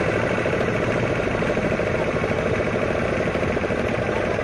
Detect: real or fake real